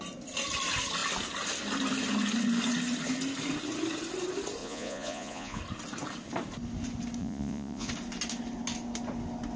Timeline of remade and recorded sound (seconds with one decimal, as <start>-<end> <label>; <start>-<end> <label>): 0.0-4.6 recorded; 4.6-5.6 remade; 5.6-7.2 recorded; 7.2-7.9 remade; 7.9-9.6 recorded